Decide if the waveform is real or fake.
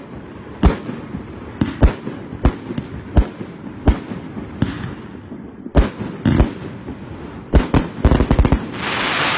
real